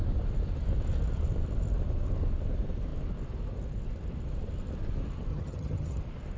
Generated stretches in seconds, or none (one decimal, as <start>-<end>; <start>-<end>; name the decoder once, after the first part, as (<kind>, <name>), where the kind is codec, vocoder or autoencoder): 5.3-6.0 (vocoder, HiFi-GAN)